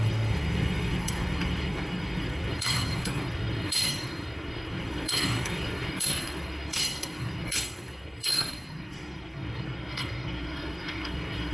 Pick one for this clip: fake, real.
fake